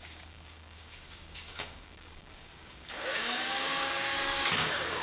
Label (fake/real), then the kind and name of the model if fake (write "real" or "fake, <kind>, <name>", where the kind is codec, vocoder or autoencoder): fake, codec, DAC